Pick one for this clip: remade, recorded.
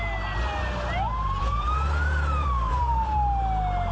recorded